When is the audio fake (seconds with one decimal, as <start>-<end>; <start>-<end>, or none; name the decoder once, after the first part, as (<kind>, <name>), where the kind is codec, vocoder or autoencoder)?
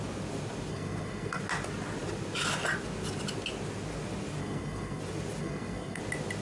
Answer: 0.7-1.4 (codec, SNAC); 4.4-5.0; 5.4-6.0